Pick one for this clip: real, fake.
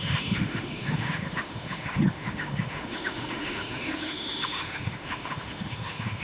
fake